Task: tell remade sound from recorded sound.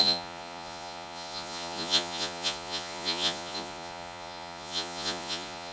remade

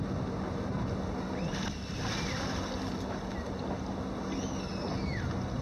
recorded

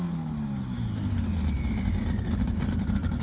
recorded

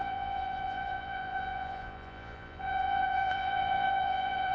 remade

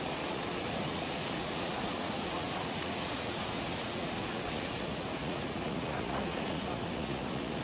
remade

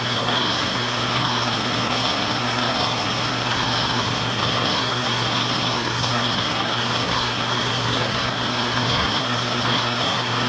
remade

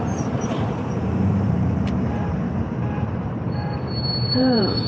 remade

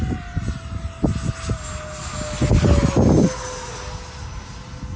recorded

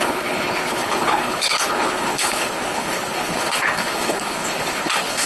remade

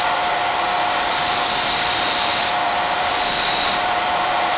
remade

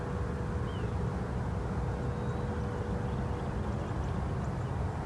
recorded